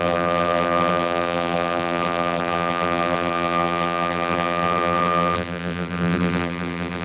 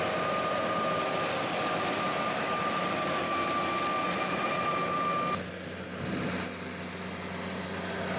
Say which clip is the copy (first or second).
first